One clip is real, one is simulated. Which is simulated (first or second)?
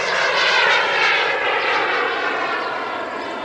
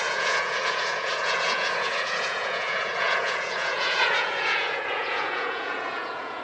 second